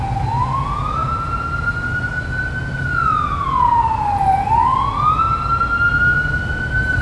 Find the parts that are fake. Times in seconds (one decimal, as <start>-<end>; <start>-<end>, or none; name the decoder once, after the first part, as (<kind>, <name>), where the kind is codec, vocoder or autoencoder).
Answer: none